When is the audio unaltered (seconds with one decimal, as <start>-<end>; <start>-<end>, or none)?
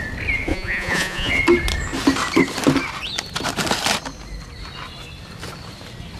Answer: 0.0-0.5; 1.3-6.2